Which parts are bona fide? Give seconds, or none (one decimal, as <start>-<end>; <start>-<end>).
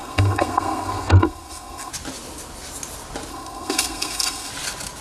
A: 1.9-3.3; 4.5-5.0